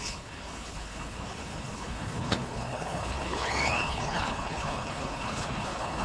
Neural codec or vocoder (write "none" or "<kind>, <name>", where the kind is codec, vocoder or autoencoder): codec, HILCodec